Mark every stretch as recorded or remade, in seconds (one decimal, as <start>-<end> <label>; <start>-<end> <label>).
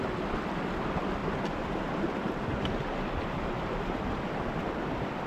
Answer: 0.0-1.2 recorded; 1.2-4.3 remade; 4.3-5.3 recorded